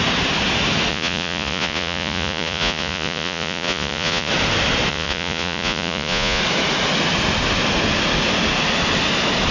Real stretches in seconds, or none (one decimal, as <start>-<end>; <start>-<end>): 0.0-0.9; 4.3-4.9; 6.4-9.5